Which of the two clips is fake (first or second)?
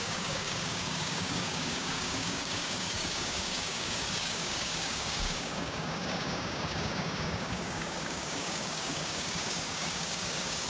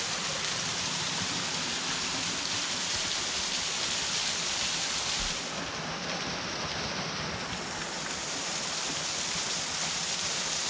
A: first